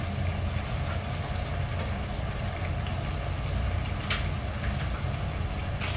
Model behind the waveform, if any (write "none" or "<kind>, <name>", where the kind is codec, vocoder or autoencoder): none